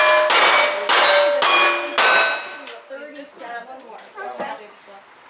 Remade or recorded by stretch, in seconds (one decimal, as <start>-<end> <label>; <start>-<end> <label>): 0.0-5.3 recorded

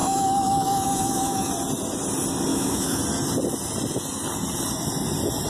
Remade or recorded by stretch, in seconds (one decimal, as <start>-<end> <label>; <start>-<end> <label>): 0.0-1.5 remade; 1.5-2.5 recorded; 2.5-3.0 remade; 3.0-5.5 recorded

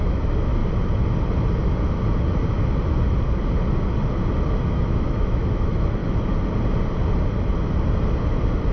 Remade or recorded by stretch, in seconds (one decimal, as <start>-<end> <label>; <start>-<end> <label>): 0.0-0.6 remade; 0.6-4.7 recorded; 4.7-6.0 remade; 6.0-8.7 recorded